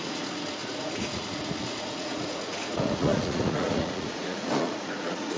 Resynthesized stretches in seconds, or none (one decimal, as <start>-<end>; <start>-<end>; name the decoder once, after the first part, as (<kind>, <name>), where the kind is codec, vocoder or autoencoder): 0.0-5.4 (vocoder, Vocos)